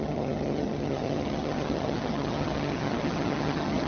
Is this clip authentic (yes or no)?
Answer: no